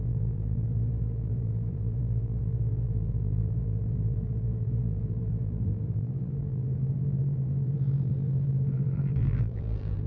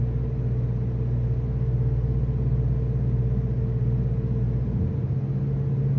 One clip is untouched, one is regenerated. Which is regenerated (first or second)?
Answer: first